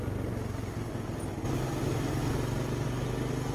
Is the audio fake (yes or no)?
no